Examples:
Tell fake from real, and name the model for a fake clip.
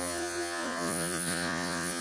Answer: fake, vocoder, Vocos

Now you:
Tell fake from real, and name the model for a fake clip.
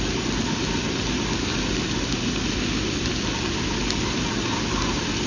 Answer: real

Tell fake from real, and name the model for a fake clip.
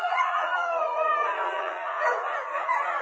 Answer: fake, vocoder, Vocos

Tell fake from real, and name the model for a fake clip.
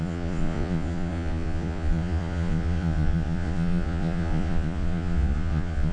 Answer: fake, vocoder, Vocos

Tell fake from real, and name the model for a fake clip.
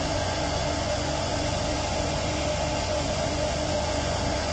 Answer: fake, vocoder, Vocos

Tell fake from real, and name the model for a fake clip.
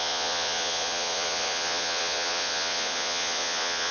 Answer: fake, vocoder, Vocos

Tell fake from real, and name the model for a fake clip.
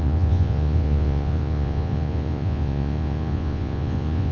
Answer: fake, vocoder, Vocos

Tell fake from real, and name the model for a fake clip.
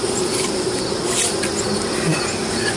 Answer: real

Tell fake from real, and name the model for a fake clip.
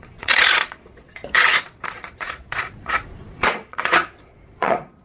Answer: fake, vocoder, Vocos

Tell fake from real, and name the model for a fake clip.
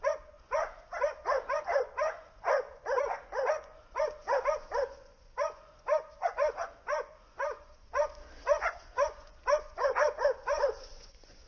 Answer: fake, vocoder, Vocos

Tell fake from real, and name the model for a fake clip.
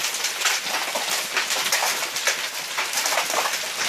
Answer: real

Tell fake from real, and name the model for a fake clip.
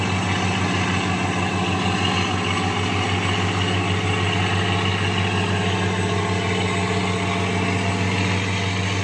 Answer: real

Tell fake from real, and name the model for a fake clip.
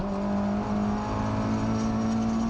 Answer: real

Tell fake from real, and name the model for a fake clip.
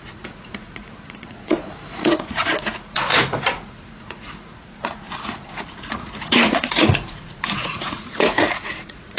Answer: fake, vocoder, Vocos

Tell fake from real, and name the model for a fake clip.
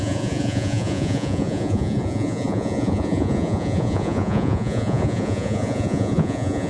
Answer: fake, vocoder, Vocos